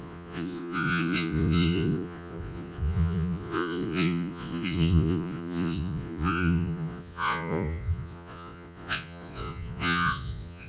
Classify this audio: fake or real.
fake